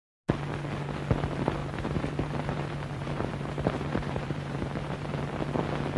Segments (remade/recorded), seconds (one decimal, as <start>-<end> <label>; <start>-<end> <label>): 0.0-1.6 recorded; 1.6-5.2 remade; 5.2-6.0 recorded